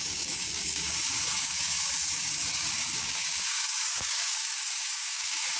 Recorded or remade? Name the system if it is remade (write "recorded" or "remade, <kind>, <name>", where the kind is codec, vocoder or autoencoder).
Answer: remade, codec, DAC